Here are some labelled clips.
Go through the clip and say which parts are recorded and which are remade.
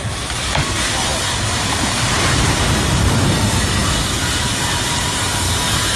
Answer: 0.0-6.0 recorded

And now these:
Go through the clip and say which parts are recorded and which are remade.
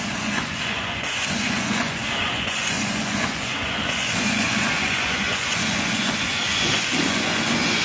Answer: 0.0-7.8 remade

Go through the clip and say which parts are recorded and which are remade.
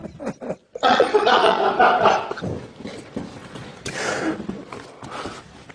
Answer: 0.0-0.6 recorded; 0.6-1.6 remade; 1.6-3.4 recorded; 3.4-3.9 remade; 3.9-5.7 recorded